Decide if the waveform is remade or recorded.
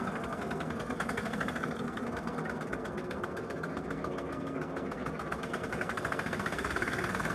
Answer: remade